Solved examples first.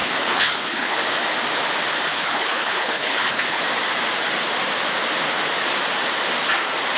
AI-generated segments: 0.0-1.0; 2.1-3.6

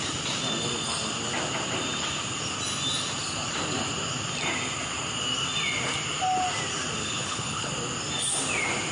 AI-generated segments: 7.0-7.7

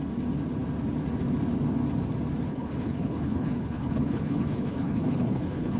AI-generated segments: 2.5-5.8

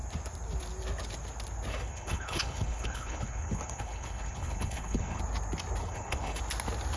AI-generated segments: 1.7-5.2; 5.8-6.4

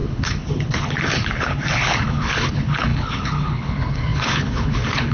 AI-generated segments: 0.0-5.1

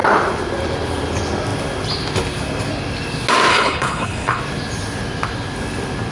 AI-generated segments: 3.5-4.4

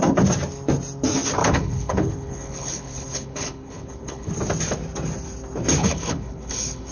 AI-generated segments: 1.4-4.3; 5.8-6.9

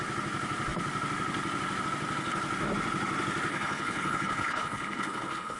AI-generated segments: 3.5-5.6